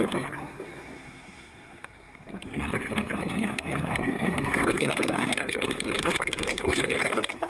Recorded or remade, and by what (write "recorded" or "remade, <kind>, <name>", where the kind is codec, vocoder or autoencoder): remade, codec, SNAC